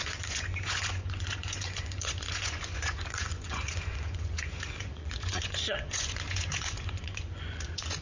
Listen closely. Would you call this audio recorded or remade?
remade